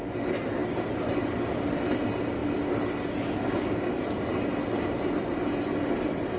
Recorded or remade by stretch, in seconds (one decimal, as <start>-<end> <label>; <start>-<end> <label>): 0.0-6.4 recorded